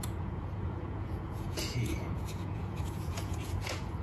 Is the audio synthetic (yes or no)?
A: yes